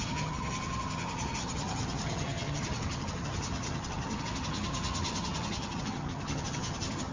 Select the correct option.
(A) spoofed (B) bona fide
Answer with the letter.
A